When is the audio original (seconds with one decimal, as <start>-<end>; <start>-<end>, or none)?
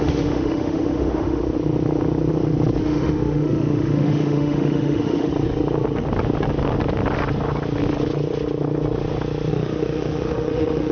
1.4-2.8; 5.3-9.5